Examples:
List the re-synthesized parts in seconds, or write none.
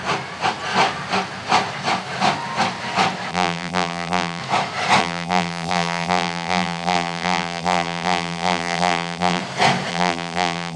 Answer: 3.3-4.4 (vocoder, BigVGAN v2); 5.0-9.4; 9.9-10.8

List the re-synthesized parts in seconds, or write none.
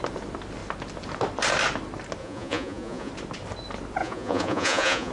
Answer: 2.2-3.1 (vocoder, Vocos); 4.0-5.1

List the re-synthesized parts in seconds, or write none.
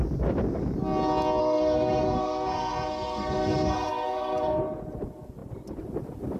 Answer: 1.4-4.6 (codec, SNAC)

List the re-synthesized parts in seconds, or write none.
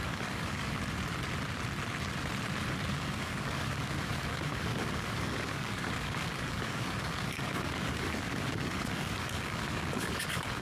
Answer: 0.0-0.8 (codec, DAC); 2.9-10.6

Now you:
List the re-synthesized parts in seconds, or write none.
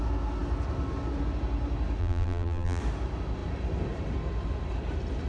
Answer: 2.0-2.8 (vocoder, BigVGAN v2)